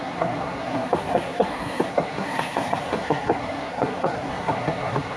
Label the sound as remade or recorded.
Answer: remade